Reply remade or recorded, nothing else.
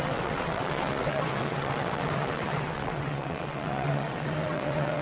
remade